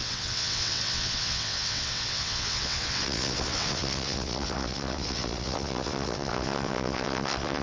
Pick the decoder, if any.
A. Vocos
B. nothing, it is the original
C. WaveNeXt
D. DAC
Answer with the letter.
C